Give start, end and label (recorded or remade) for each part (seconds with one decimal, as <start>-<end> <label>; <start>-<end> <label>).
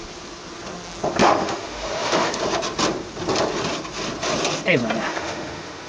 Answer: 0.0-1.2 recorded; 1.2-2.3 remade; 2.3-5.1 recorded; 5.1-5.9 remade